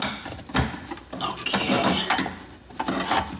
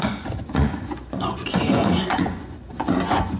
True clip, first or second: first